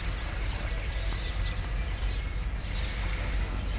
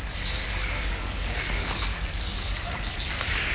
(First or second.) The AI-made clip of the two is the second